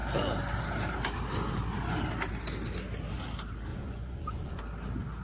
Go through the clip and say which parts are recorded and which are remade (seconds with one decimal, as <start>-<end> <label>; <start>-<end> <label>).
0.0-3.7 recorded; 3.7-4.6 remade; 4.6-5.2 recorded